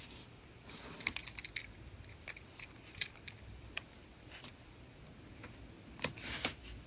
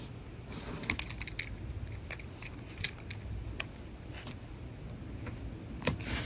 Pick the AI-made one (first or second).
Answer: first